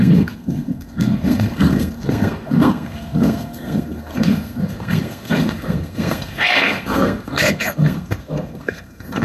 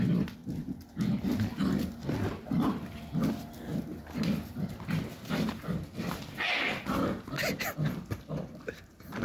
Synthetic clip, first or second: first